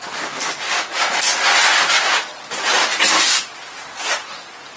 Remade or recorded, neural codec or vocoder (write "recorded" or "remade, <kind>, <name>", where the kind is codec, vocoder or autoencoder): recorded